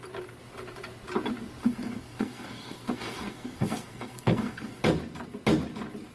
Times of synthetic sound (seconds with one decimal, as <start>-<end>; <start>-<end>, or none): 1.6-4.8